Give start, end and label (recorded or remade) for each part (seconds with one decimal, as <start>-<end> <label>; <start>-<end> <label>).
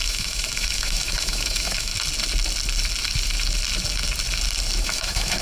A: 0.0-1.9 remade; 1.9-4.8 recorded; 4.8-5.4 remade